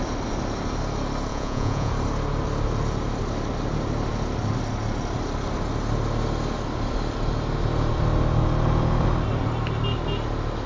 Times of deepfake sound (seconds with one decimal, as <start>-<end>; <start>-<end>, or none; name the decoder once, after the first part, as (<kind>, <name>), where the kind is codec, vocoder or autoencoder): 1.3-1.9 (vocoder, Vocos)

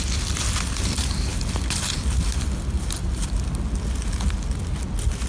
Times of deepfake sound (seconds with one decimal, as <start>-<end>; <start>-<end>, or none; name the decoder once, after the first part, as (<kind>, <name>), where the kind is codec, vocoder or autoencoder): none

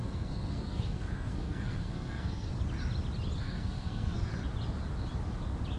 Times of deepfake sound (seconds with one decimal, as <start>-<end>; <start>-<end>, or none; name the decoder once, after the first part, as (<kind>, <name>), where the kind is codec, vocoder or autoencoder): 0.0-2.5 (codec, SNAC); 3.4-4.3

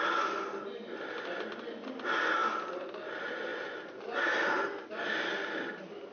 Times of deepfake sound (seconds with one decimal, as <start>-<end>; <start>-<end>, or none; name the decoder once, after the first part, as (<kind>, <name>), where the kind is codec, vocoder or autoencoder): none

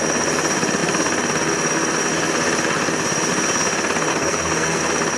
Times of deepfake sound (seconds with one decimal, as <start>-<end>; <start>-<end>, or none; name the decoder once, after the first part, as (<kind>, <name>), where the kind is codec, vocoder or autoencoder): 4.1-4.8 (codec, SNAC)

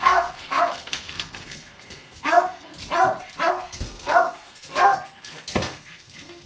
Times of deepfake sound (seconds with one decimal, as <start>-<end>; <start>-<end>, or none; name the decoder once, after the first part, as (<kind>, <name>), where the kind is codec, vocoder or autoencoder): 0.0-2.7 (codec, SNAC); 3.5-6.5